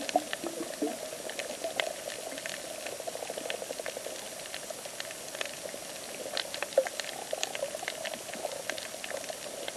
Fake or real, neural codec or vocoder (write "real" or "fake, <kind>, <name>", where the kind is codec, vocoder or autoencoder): real